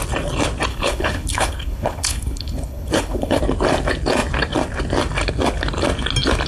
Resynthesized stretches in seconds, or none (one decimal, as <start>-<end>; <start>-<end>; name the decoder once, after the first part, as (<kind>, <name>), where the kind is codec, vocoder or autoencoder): 0.7-3.4 (codec, HILCodec)